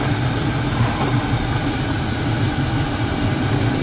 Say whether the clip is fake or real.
real